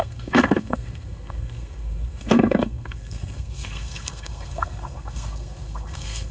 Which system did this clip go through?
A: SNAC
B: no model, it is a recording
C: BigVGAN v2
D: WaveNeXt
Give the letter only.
A